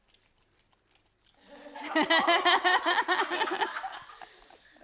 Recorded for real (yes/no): yes